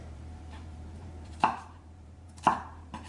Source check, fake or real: fake